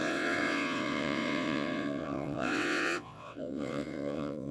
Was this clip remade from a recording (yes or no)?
yes